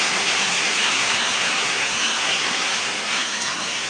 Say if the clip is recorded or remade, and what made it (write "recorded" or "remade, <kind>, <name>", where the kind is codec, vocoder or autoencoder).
remade, codec, SNAC